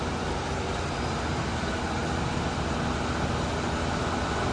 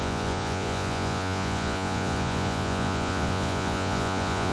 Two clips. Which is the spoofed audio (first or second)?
second